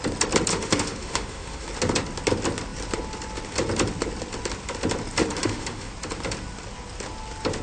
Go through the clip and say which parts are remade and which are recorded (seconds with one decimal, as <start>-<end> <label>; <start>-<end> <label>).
0.0-0.5 recorded; 0.5-1.7 remade; 1.7-5.2 recorded; 5.2-5.9 remade; 5.9-7.6 recorded